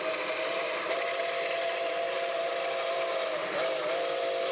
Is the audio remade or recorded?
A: recorded